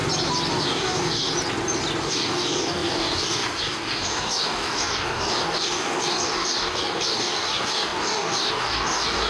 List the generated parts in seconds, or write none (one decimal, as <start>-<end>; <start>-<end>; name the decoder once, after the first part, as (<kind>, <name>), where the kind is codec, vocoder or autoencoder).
0.5-1.3 (codec, DAC); 2.0-9.3